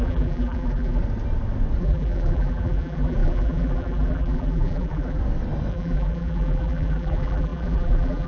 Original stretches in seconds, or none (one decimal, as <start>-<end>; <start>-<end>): 1.0-1.8; 5.2-5.7